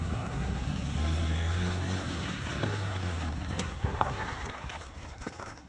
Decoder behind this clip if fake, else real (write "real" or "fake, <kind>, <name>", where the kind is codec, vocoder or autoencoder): fake, codec, SNAC